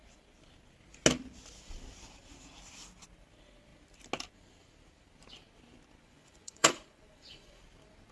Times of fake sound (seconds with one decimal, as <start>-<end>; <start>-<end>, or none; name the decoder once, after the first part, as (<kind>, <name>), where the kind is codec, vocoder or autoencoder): 6.0-7.6 (vocoder, Vocos)